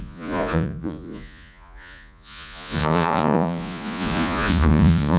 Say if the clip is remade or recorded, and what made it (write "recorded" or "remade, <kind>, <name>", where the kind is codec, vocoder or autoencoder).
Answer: remade, vocoder, Vocos